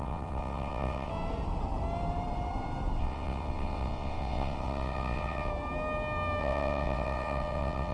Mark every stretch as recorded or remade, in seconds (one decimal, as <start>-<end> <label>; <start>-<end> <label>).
0.0-1.1 remade; 1.1-3.0 recorded; 3.0-5.5 remade; 5.5-6.4 recorded; 6.4-7.9 remade